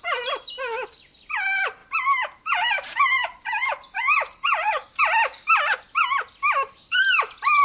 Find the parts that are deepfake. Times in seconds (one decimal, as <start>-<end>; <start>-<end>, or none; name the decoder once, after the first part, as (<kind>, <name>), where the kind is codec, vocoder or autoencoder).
1.8-5.0 (vocoder, BigVGAN v2)